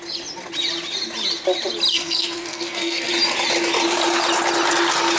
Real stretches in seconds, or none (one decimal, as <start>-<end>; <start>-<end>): 0.0-1.9; 3.1-5.2